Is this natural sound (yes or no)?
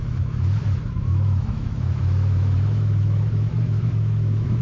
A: no